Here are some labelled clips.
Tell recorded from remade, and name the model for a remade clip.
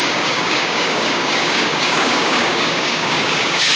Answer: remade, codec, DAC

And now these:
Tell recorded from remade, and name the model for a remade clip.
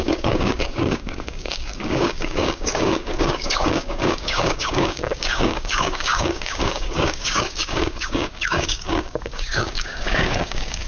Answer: remade, codec, DAC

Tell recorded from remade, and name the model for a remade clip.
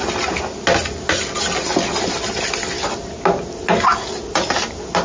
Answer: recorded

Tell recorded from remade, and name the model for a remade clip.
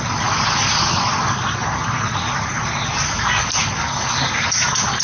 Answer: recorded